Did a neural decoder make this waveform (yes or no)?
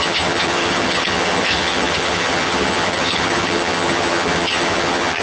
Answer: yes